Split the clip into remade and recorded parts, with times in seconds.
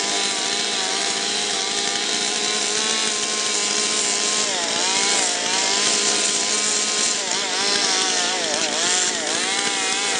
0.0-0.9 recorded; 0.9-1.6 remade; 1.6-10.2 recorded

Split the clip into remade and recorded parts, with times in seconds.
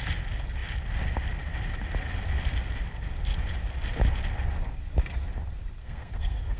0.0-5.8 recorded; 5.8-6.6 remade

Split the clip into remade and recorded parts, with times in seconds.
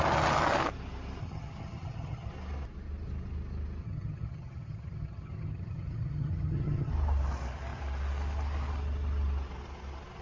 0.0-1.2 recorded; 1.2-2.3 remade; 2.3-3.8 recorded; 3.8-6.9 remade; 6.9-10.2 recorded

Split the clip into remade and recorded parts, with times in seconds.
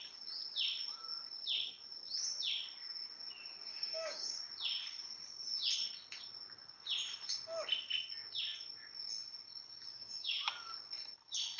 0.0-3.7 recorded; 3.7-4.4 remade; 4.4-9.9 recorded; 9.9-10.5 remade; 10.5-11.6 recorded